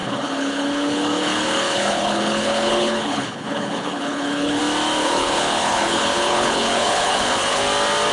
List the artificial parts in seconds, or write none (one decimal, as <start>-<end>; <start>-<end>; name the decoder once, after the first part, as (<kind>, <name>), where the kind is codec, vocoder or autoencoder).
0.0-4.6 (codec, HILCodec); 5.0-7.6